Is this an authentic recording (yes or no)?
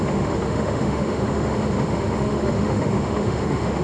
no